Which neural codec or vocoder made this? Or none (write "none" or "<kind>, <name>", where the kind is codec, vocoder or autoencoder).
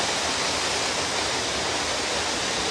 none